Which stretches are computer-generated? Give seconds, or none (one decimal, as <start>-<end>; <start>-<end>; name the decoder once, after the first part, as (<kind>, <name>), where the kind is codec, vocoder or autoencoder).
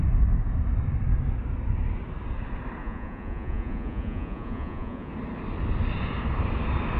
2.8-5.1 (vocoder, Vocos)